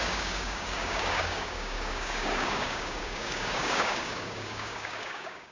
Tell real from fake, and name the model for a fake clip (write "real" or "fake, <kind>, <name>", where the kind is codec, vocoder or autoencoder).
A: fake, codec, DAC